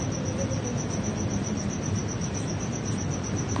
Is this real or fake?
real